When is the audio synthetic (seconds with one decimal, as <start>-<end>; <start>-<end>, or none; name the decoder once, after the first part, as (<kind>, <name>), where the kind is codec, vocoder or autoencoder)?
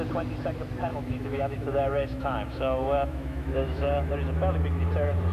0.9-4.1 (autoencoder, DAC-VAE)